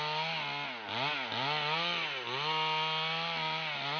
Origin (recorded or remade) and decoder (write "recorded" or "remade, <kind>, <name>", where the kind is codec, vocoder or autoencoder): recorded